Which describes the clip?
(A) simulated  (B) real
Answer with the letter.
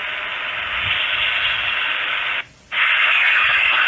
B